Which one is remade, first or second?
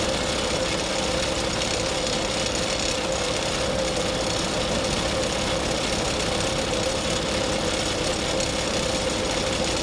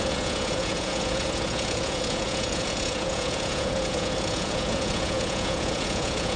second